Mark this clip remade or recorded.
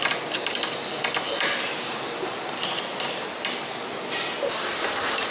recorded